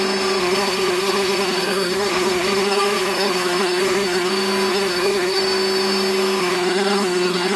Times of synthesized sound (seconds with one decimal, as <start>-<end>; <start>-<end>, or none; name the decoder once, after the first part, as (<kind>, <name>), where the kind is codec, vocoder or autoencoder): 0.4-4.3 (codec, SNAC); 4.7-5.4; 6.4-7.6